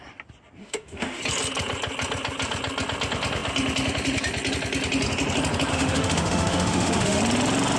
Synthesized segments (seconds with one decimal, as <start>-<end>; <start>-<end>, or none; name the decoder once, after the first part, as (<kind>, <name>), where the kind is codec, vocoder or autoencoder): 0.6-1.2 (autoencoder, DAC-VAE); 5.7-7.2